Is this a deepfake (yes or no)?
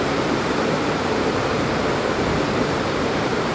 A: yes